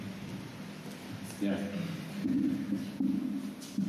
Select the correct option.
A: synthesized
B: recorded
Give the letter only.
B